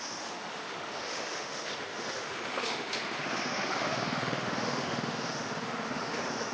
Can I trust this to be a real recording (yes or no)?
no